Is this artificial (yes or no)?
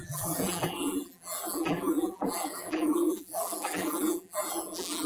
yes